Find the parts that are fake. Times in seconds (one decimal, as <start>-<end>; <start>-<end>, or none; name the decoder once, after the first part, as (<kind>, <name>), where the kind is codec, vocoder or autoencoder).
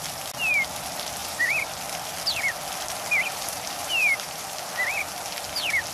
1.2-1.7 (vocoder, BigVGAN v2); 3.3-4.5